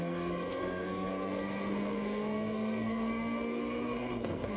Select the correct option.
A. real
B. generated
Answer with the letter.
B